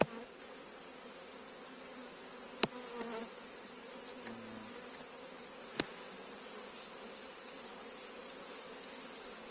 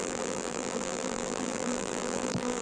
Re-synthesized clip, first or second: second